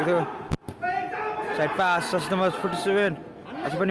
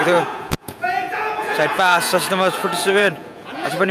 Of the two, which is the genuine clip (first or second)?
first